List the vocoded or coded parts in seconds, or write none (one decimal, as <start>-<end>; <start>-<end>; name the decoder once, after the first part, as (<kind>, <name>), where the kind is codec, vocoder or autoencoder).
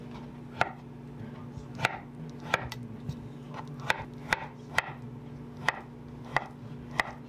none